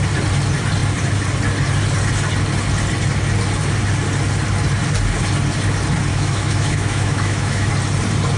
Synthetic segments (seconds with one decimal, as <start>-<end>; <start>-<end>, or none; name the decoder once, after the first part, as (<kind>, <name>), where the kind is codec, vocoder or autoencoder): 6.1-7.7 (autoencoder, DAC-VAE)